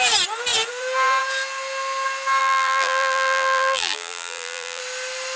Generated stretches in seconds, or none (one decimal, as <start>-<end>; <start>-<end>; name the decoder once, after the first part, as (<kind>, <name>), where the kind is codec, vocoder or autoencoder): 2.4-4.8 (vocoder, BigVGAN v2)